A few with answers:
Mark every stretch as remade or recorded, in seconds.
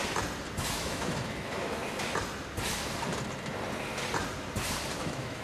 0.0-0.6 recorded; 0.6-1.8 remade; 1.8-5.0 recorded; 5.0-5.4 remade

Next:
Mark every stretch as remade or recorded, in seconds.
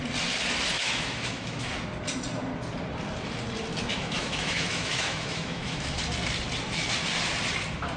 0.0-0.7 recorded; 0.7-1.7 remade; 1.7-3.9 recorded; 3.9-6.0 remade; 6.0-8.0 recorded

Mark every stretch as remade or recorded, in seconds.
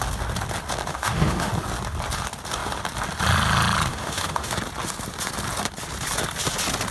0.0-0.9 recorded; 0.9-1.5 remade; 1.5-3.9 recorded; 3.9-4.5 remade; 4.5-6.9 recorded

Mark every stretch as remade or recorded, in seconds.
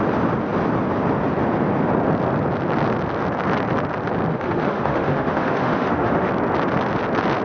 0.0-4.3 recorded; 4.3-6.3 remade; 6.3-7.4 recorded